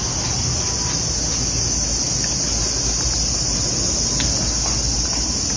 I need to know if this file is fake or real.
real